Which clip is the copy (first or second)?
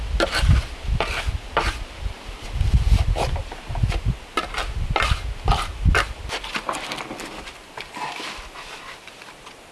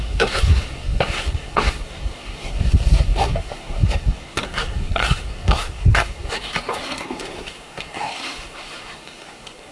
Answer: second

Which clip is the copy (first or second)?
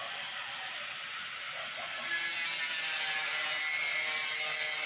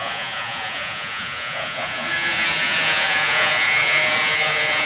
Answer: second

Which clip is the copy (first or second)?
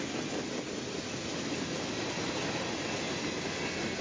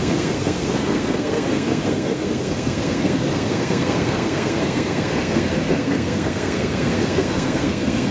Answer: second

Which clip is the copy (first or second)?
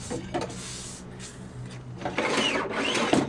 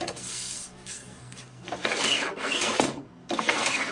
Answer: second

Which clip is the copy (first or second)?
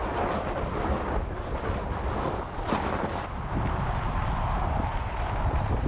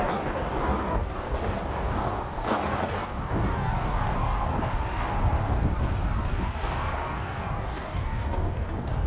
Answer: second